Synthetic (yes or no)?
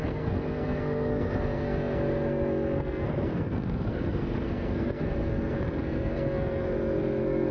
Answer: yes